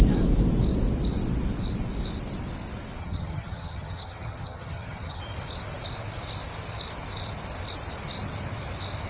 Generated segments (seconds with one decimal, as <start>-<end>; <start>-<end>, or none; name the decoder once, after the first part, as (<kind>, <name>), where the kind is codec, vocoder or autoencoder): 3.0-5.2 (vocoder, HiFi-GAN)